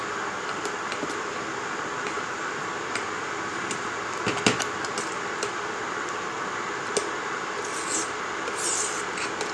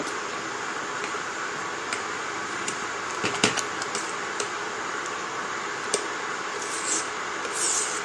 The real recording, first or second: first